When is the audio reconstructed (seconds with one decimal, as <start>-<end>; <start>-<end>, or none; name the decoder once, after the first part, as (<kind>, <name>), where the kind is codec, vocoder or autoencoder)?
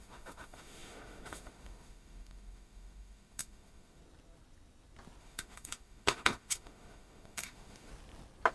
0.0-4.0 (autoencoder, DAC-VAE); 5.2-7.9